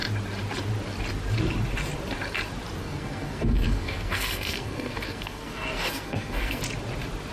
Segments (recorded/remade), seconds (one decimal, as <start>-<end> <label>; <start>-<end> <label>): 0.0-2.8 recorded; 2.8-6.6 remade; 6.6-7.3 recorded